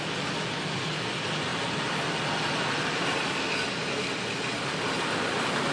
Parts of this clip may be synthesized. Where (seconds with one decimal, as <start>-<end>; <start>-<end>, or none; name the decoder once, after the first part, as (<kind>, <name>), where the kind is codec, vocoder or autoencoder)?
none